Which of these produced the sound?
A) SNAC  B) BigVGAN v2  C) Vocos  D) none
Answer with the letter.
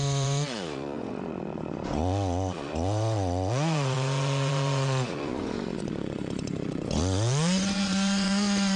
C